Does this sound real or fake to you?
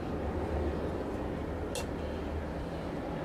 real